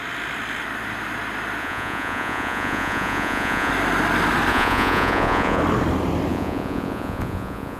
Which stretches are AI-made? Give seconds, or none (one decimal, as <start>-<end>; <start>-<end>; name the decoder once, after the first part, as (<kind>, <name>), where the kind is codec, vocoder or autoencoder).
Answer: 1.6-3.7 (vocoder, Vocos); 4.5-5.6; 6.3-7.8